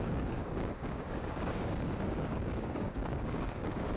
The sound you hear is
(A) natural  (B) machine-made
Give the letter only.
B